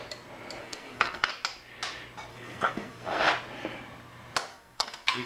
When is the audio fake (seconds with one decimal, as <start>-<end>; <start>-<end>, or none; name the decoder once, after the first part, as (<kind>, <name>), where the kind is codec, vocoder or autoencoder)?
0.6-1.3 (codec, SNAC); 2.3-3.3; 4.5-5.3